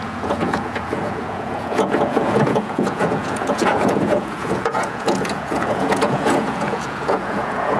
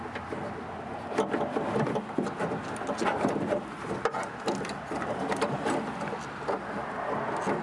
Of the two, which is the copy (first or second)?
first